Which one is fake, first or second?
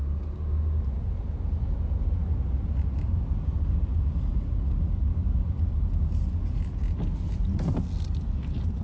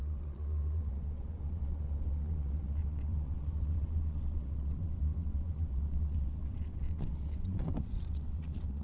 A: second